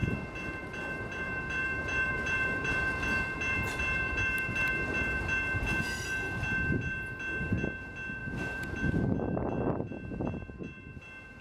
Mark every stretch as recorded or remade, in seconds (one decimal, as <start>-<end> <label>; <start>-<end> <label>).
0.0-5.2 remade; 5.2-8.2 recorded; 8.2-9.4 remade; 9.4-11.4 recorded